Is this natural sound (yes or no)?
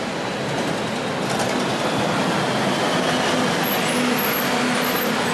yes